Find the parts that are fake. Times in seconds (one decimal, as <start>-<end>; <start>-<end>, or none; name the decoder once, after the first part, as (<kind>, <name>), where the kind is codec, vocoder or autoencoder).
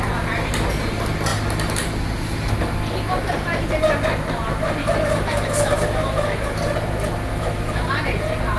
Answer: 4.8-6.6 (autoencoder, DAC-VAE); 7.3-7.9